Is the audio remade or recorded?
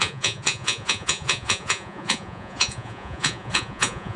remade